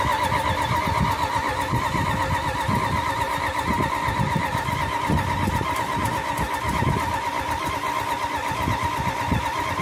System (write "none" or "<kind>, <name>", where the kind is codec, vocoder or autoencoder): none